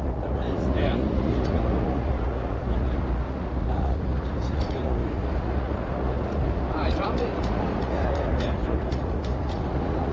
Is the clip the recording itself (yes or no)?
no